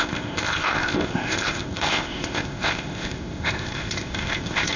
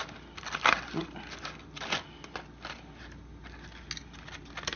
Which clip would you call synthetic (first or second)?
first